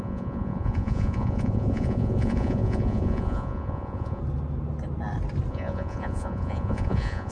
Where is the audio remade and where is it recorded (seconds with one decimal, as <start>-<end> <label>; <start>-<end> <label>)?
0.0-4.2 remade; 4.2-5.5 recorded; 5.5-7.3 remade